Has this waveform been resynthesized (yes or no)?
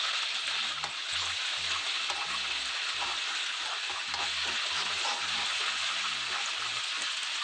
no